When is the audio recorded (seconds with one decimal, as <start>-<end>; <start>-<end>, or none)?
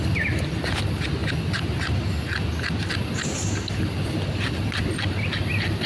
0.0-5.9